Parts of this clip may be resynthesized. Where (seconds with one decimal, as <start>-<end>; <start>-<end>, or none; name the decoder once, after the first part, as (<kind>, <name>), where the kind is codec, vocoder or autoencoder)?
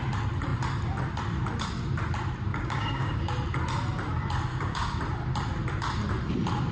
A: 2.5-3.3 (codec, DAC); 4.5-5.0